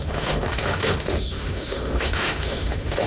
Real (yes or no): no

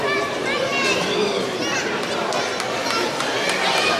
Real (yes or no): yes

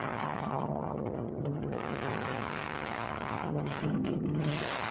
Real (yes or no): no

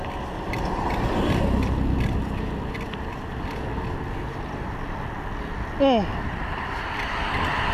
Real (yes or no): yes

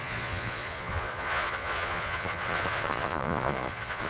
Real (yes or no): no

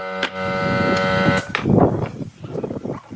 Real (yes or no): yes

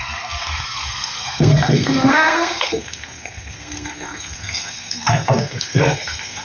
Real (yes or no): no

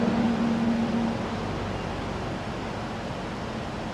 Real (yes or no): yes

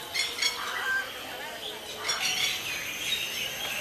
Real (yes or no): yes